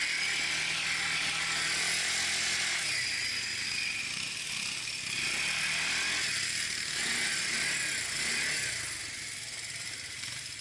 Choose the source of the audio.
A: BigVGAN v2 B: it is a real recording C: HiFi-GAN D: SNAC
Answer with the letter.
B